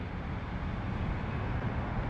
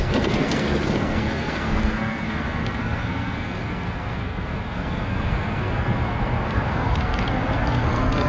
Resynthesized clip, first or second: second